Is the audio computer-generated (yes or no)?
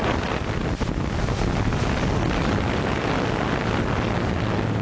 no